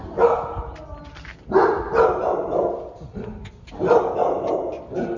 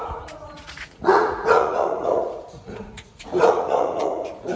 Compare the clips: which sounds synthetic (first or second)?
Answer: second